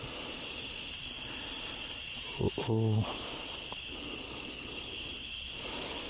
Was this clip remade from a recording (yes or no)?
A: no